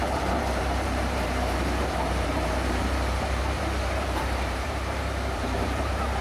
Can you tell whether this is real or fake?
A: fake